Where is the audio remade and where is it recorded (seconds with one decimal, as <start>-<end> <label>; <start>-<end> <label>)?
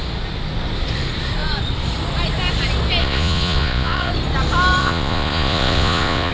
0.0-3.0 recorded; 3.0-4.1 remade; 4.1-4.8 recorded; 4.8-6.3 remade